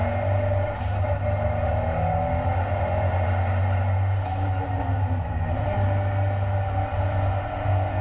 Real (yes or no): yes